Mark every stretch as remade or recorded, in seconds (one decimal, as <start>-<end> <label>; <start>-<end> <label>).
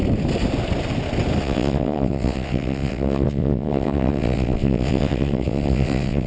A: 0.0-1.4 recorded; 1.4-6.3 remade